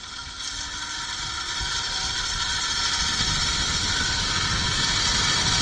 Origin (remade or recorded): recorded